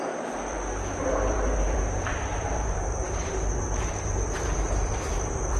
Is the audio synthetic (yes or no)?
yes